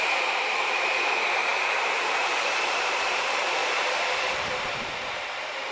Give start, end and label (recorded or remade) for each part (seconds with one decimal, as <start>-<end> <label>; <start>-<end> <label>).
0.0-5.7 remade

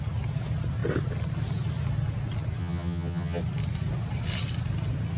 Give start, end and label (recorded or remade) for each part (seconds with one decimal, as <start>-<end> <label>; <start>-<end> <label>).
0.0-2.6 recorded; 2.6-3.4 remade; 3.4-5.2 recorded

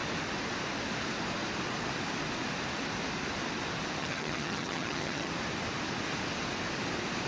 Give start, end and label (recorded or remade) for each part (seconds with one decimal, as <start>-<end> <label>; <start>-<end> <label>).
0.0-4.0 recorded; 4.0-5.3 remade; 5.3-7.3 recorded

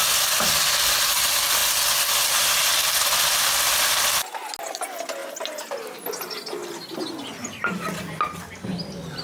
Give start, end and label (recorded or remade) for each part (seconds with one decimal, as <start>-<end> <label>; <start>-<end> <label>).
0.0-9.2 recorded

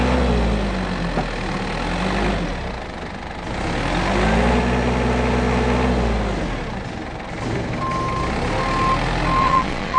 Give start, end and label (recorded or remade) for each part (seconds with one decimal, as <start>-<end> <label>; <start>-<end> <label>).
0.0-9.4 recorded; 9.4-10.0 remade

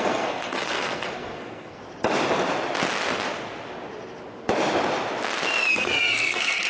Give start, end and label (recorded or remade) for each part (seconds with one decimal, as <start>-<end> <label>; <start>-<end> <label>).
0.0-1.8 remade; 1.8-5.7 recorded; 5.7-6.7 remade